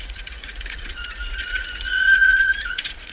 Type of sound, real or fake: fake